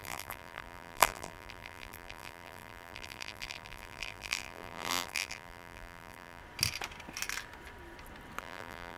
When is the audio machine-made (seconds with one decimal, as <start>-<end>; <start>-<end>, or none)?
0.0-6.4; 8.4-9.0